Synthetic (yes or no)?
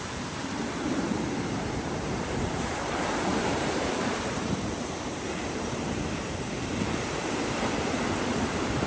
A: yes